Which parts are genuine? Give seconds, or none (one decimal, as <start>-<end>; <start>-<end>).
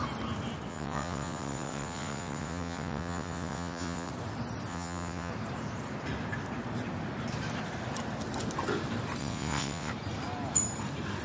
0.0-0.7; 4.1-4.7; 5.3-9.2; 9.9-11.2